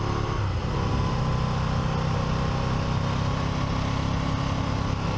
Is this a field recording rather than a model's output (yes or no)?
yes